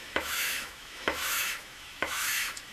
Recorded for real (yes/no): no